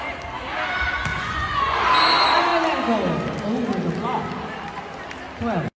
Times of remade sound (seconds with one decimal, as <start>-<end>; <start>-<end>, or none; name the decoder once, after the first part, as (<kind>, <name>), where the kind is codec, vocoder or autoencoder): 1.1-1.8 (vocoder, Vocos)

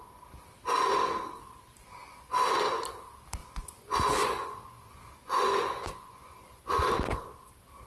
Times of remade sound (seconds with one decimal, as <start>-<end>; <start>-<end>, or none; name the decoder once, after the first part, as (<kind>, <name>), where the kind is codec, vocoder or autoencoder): 2.0-2.8 (vocoder, Vocos); 3.4-6.9

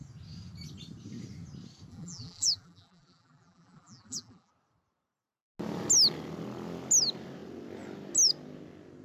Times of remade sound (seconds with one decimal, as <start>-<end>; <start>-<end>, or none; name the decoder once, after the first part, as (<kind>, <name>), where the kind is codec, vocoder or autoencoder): 1.9-4.5 (vocoder, BigVGAN v2)

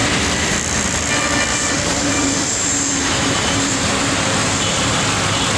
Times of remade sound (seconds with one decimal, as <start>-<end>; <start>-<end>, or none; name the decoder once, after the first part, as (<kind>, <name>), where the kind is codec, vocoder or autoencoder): 1.5-4.9 (vocoder, BigVGAN v2)

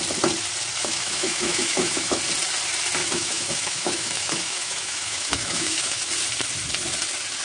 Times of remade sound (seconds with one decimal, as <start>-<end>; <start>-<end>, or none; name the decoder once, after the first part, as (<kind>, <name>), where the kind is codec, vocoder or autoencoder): 0.8-2.2 (autoencoder, DAC-VAE); 3.0-6.1

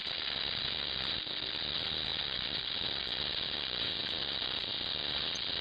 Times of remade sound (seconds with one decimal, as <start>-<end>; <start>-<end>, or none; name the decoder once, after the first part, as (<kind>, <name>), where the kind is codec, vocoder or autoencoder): none